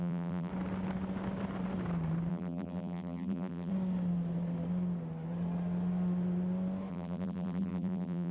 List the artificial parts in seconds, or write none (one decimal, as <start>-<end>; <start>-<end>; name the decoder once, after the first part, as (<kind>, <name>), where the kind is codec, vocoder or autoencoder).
0.0-0.5 (vocoder, BigVGAN v2); 2.3-3.7; 6.9-8.3